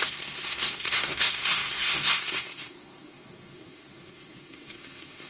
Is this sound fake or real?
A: fake